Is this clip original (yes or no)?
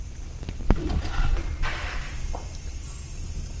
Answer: yes